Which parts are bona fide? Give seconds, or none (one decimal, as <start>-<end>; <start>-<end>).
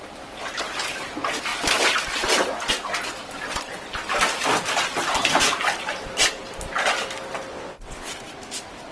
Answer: 0.0-7.5; 8.1-8.9